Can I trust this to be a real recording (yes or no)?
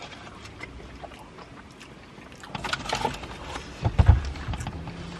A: yes